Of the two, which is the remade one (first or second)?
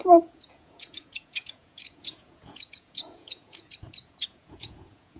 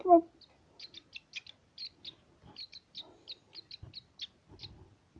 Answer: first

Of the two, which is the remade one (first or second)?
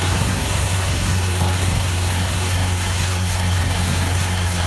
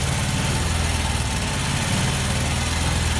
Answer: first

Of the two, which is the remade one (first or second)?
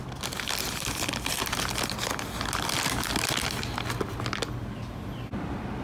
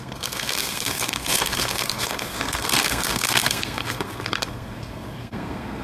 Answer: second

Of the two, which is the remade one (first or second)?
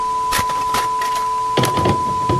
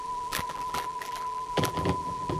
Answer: second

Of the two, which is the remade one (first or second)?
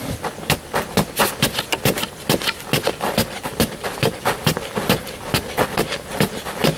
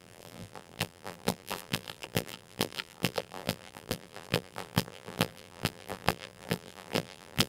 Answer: second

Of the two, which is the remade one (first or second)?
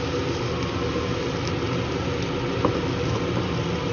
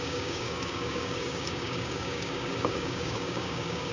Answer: second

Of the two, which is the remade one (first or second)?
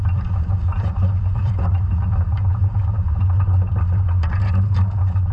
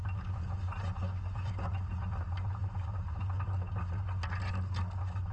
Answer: first